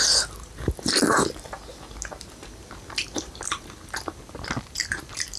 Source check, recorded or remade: recorded